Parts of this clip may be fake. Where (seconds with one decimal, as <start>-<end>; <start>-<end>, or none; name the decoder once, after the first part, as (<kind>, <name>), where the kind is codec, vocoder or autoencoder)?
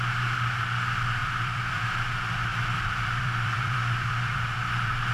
1.2-1.8 (vocoder, BigVGAN v2); 2.5-4.4